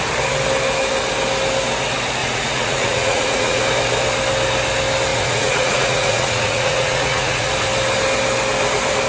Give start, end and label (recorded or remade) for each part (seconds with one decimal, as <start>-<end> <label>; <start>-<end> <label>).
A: 0.0-2.2 recorded; 2.2-3.6 remade; 3.6-5.1 recorded; 5.1-7.5 remade; 7.5-9.1 recorded